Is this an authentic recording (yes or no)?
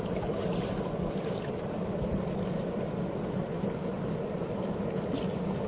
yes